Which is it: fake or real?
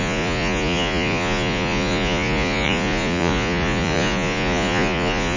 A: fake